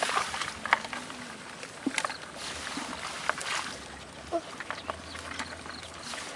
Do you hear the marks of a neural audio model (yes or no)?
no